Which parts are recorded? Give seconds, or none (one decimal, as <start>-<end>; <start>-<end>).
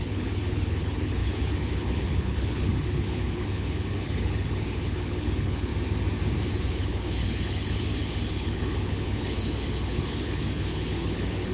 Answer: 5.7-6.5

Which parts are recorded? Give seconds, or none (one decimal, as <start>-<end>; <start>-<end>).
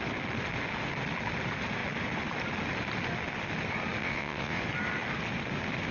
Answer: 0.0-4.0; 4.6-5.9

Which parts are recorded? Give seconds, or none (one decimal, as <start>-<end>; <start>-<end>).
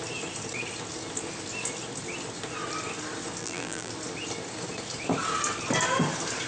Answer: 0.0-3.4; 3.9-6.5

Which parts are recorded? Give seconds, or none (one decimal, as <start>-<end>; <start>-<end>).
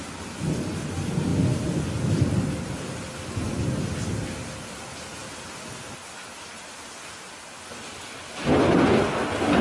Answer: 0.0-9.6